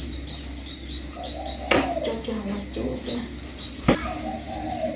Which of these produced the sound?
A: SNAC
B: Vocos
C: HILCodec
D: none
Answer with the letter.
D